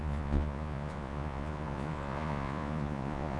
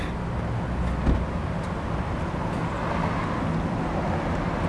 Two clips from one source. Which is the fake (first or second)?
first